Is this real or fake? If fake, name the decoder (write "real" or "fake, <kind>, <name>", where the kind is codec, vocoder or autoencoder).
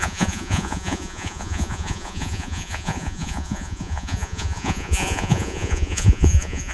fake, vocoder, Vocos